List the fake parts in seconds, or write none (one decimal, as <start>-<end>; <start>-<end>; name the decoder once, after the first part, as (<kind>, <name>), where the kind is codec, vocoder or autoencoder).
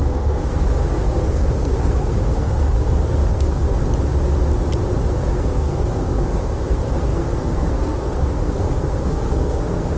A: 0.0-3.8 (codec, SNAC); 5.0-10.0